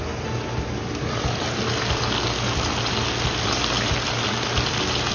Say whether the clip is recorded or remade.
recorded